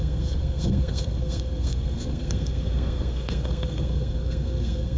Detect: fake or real fake